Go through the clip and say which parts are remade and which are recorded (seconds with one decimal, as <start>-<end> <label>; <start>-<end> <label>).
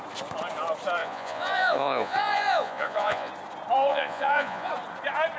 0.0-1.0 recorded; 1.0-3.3 remade; 3.3-3.9 recorded; 3.9-4.7 remade; 4.7-5.4 recorded